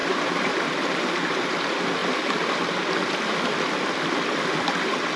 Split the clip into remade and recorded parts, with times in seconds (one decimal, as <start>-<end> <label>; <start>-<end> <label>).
0.0-2.0 remade; 2.0-5.2 recorded